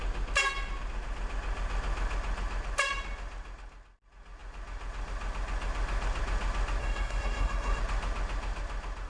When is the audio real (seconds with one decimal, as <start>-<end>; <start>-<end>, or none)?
0.0-6.8; 7.8-9.1